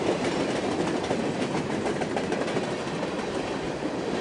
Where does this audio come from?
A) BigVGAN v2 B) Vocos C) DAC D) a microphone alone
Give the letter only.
D